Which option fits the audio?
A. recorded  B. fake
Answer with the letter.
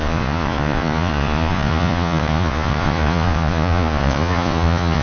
B